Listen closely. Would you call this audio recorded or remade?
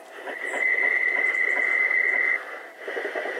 recorded